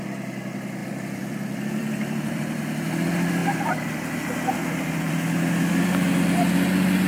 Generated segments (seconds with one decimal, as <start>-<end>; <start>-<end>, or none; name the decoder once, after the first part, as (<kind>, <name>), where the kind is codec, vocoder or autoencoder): 0.8-2.6 (vocoder, BigVGAN v2); 3.4-5.1